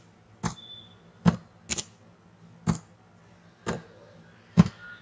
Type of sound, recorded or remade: recorded